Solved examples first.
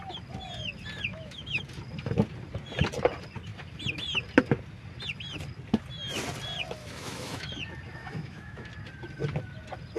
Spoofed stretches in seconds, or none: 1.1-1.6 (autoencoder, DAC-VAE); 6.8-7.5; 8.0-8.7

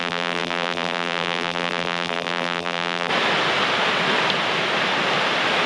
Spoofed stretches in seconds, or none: 0.0-3.1 (vocoder, BigVGAN v2)

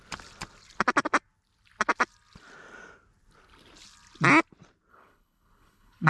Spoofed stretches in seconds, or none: 4.9-6.1 (codec, HILCodec)

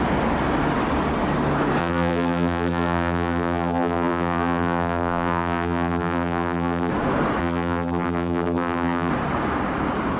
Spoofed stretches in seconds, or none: 1.8-6.9 (vocoder, BigVGAN v2); 7.4-9.1

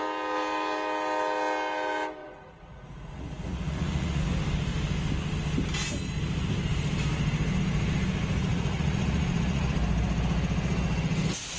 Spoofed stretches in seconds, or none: 2.2-4.2 (vocoder, Vocos); 8.5-9.7

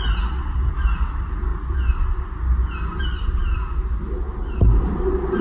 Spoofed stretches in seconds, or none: none

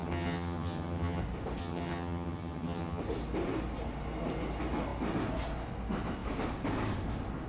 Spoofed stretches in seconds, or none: 0.0-1.2 (vocoder, HiFi-GAN); 1.6-3.0

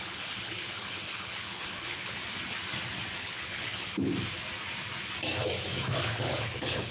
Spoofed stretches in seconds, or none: 0.0-2.2 (codec, HILCodec); 3.2-4.1; 5.9-6.9